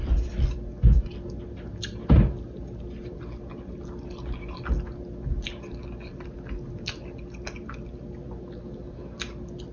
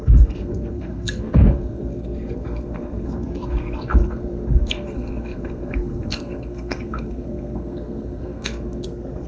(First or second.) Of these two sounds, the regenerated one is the second